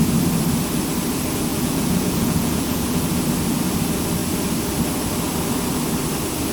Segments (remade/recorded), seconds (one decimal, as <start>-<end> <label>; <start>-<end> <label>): 0.0-1.5 recorded; 1.5-3.0 remade; 3.0-6.5 recorded